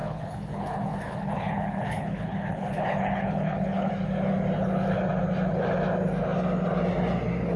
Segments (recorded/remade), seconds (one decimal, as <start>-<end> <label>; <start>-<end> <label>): 0.0-3.9 remade; 3.9-7.6 recorded